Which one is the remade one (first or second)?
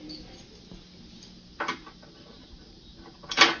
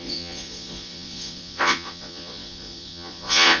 second